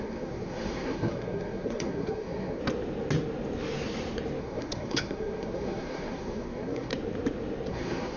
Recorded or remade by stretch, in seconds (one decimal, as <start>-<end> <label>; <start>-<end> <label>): 0.0-2.6 remade; 2.6-4.4 recorded; 4.4-6.9 remade; 6.9-7.7 recorded; 7.7-8.2 remade